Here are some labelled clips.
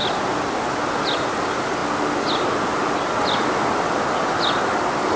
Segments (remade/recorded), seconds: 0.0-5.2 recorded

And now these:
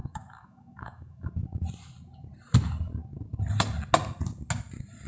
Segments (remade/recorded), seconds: 0.0-1.3 remade; 1.3-5.1 recorded

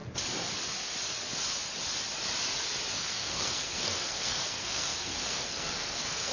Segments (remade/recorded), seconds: 0.0-2.9 recorded; 2.9-6.3 remade

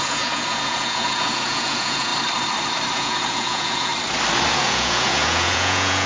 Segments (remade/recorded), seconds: 0.0-2.1 remade; 2.1-2.9 recorded; 2.9-3.9 remade; 3.9-4.5 recorded; 4.5-6.1 remade